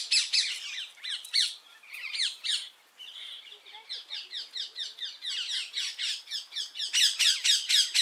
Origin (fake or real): real